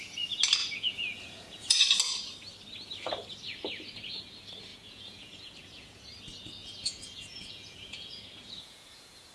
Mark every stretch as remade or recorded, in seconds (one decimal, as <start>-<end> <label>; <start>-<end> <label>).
0.0-0.6 recorded; 0.6-1.8 remade; 1.8-4.7 recorded; 4.7-6.0 remade; 6.0-6.6 recorded; 6.6-9.3 remade